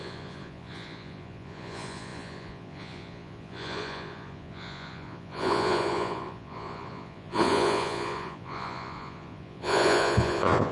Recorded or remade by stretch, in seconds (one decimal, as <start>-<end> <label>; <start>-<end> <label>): 0.0-10.7 remade